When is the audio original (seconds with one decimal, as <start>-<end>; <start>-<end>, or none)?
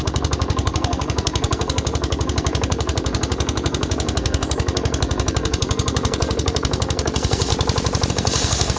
7.5-8.1